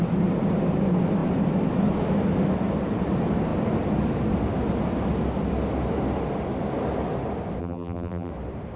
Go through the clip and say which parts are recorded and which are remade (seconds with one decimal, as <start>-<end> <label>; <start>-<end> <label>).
0.0-7.6 recorded; 7.6-8.3 remade; 8.3-8.8 recorded